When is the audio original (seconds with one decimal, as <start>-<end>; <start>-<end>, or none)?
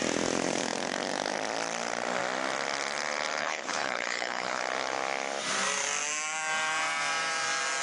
0.0-3.4; 4.6-7.8